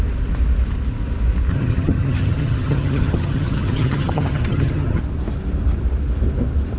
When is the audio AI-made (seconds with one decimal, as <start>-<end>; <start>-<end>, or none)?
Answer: 1.5-5.0